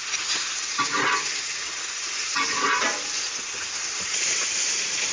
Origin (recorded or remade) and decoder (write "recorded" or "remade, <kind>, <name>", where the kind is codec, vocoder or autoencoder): recorded